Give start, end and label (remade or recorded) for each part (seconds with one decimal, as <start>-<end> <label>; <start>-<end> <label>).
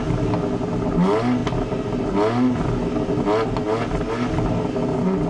0.0-5.3 recorded